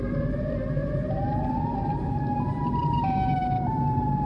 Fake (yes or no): yes